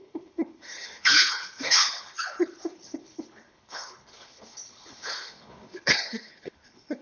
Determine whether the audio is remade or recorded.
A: remade